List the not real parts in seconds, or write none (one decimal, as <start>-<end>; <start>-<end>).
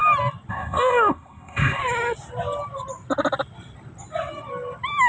0.5-1.8